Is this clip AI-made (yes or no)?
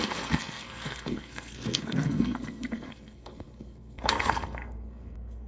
yes